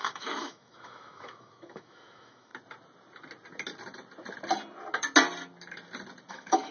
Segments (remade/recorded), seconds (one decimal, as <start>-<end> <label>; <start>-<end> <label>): 0.0-2.5 remade; 2.5-6.3 recorded; 6.3-6.7 remade